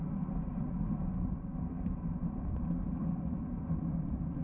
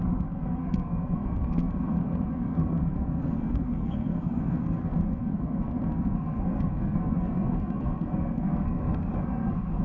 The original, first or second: first